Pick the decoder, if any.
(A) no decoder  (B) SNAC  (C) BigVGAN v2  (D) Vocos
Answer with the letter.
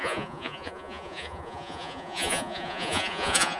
D